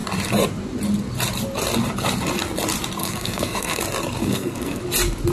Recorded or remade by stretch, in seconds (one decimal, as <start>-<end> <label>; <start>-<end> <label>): 0.0-3.0 recorded; 3.0-3.8 remade; 3.8-4.2 recorded; 4.2-4.8 remade; 4.8-5.3 recorded